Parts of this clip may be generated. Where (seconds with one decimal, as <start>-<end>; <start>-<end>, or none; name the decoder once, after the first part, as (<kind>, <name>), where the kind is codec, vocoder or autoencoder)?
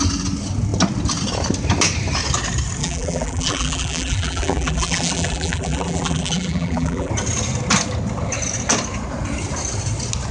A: 2.8-7.1 (vocoder, BigVGAN v2)